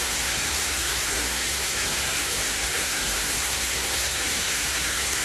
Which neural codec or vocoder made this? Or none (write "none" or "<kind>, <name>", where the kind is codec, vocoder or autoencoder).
codec, SNAC